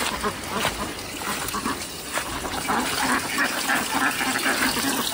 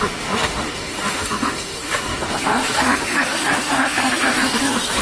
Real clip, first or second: first